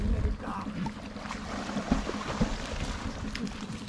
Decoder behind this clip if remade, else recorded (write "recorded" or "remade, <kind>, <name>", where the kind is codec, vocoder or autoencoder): remade, vocoder, BigVGAN v2